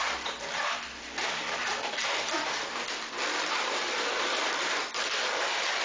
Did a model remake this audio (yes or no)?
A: yes